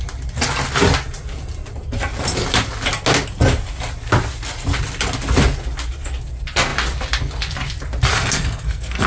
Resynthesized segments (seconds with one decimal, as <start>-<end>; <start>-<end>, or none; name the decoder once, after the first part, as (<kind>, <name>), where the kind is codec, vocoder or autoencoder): 8.1-9.1 (codec, SNAC)

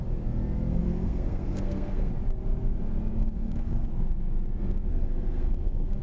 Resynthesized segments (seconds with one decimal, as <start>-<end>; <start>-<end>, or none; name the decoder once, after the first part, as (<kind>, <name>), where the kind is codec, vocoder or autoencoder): 0.7-2.1 (codec, SNAC); 3.2-3.9; 4.9-6.0

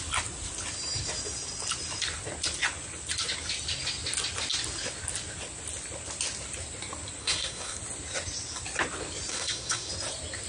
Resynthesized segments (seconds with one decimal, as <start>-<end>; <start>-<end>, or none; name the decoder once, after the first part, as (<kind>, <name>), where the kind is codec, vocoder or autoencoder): 7.2-7.8 (codec, SNAC); 9.3-9.9

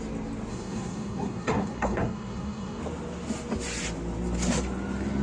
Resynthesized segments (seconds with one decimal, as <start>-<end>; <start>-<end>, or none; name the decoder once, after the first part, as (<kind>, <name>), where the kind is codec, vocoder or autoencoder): 0.5-2.8 (codec, SNAC)

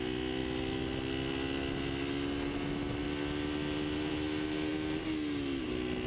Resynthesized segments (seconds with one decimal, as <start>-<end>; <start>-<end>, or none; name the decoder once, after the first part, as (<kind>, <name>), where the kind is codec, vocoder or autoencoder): none